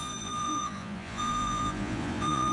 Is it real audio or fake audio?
fake